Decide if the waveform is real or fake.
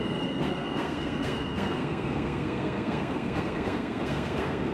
fake